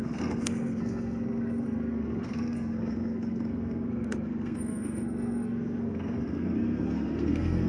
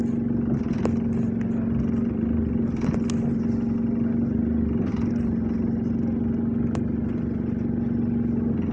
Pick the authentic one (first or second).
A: second